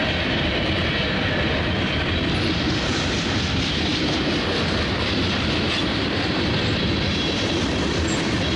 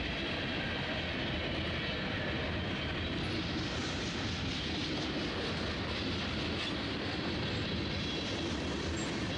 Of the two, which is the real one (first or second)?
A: second